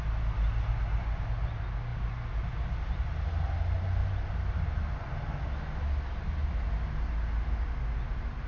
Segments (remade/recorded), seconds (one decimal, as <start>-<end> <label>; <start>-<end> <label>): 0.0-8.5 recorded